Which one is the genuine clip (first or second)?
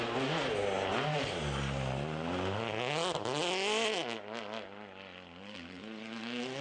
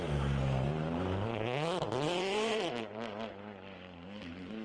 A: first